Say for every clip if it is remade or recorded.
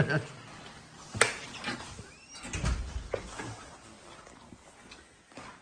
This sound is recorded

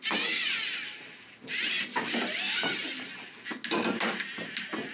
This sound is recorded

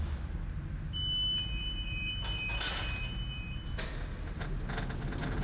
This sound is recorded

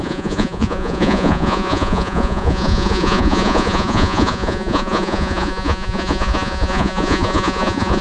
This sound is remade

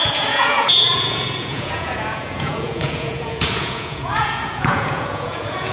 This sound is remade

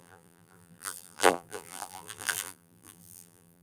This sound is remade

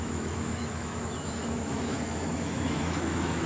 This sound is remade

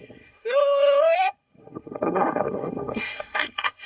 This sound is remade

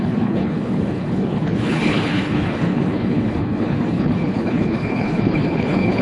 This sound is remade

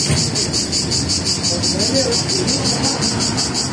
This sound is recorded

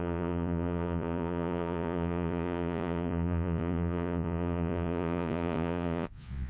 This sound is remade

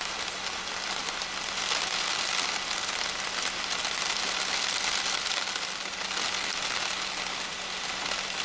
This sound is recorded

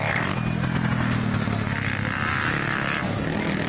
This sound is recorded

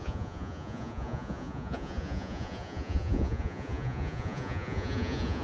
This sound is remade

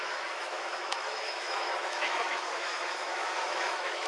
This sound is remade